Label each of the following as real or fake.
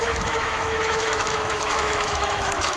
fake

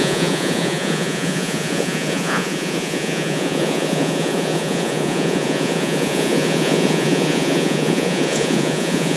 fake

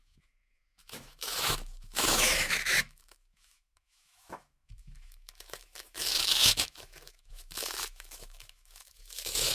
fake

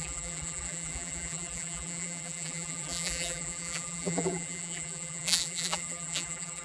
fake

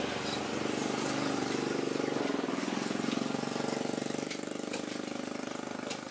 fake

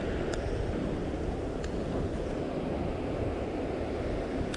real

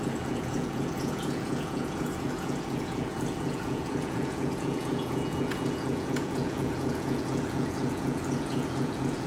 fake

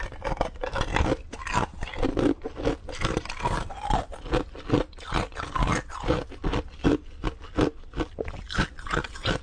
real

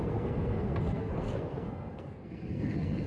fake